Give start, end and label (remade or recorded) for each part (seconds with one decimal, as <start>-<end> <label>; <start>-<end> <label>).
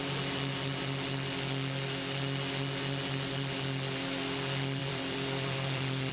0.0-4.8 recorded; 4.8-6.1 remade